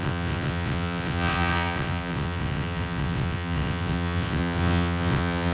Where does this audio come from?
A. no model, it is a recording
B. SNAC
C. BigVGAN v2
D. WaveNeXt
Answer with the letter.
D